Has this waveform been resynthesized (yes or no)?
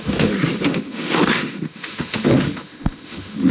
yes